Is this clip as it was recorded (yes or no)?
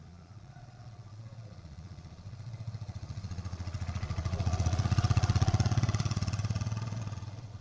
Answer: no